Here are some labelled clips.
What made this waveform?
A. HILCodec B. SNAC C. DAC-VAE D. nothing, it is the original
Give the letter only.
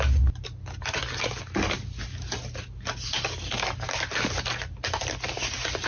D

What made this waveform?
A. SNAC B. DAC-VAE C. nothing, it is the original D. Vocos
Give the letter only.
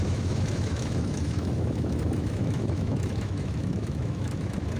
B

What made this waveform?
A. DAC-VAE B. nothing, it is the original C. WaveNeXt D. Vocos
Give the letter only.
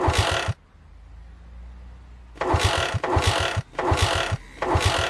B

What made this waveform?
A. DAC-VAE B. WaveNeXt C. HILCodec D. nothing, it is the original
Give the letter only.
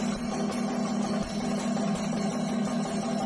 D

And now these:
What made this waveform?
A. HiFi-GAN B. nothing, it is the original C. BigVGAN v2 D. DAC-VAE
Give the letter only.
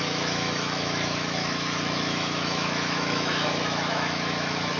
D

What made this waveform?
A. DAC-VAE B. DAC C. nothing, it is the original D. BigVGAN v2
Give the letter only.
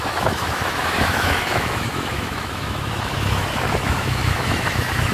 A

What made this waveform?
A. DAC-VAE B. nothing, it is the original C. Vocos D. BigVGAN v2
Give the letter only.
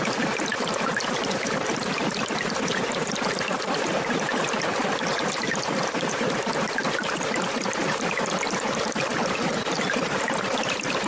B